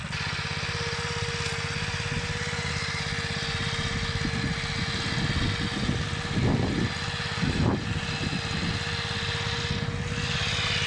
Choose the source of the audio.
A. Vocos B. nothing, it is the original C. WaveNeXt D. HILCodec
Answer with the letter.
B